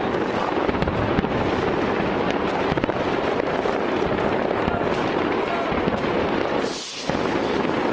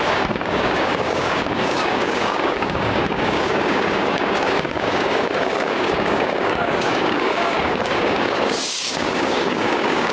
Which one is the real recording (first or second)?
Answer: first